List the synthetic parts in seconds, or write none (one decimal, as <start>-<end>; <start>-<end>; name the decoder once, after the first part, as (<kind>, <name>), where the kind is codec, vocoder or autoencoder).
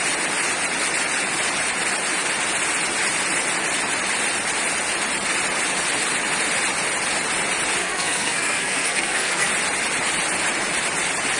7.8-9.5 (codec, SNAC)